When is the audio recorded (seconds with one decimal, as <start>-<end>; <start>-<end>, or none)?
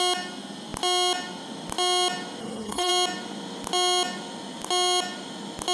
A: 0.0-2.4; 2.9-5.7